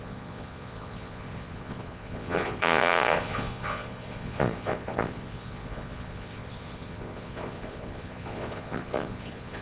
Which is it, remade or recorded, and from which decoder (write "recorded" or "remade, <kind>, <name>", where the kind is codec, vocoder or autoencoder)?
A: remade, vocoder, Vocos